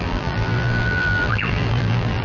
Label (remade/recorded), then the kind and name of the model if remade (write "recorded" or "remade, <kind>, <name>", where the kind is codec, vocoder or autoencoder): remade, vocoder, BigVGAN v2